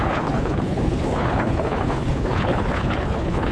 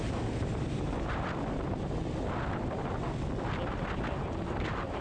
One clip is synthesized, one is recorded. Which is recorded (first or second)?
second